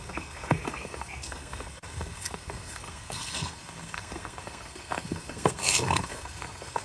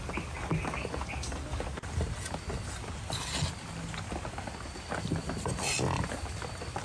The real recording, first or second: second